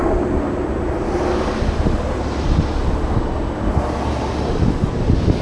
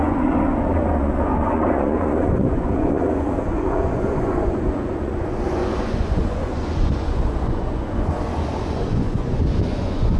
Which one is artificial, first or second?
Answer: second